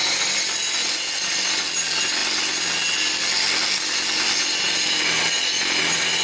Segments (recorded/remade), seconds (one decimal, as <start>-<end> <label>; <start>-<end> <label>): 0.0-6.2 recorded